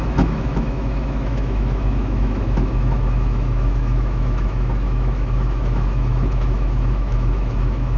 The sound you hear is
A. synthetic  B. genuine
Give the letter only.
A